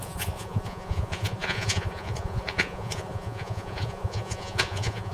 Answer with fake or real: fake